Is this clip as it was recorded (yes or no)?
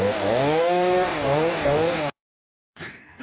no